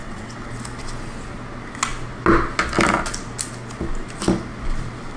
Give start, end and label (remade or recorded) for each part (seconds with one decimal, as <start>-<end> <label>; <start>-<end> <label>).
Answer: 0.0-0.5 remade; 0.5-5.2 recorded